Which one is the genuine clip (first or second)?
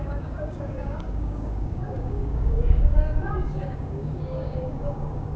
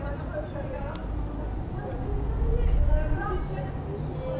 second